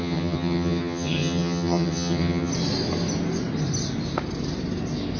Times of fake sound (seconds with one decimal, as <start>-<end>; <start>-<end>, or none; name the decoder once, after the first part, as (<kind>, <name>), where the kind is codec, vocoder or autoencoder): 0.0-2.5 (vocoder, HiFi-GAN)